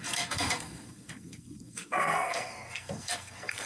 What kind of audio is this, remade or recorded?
remade